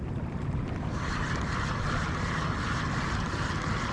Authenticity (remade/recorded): recorded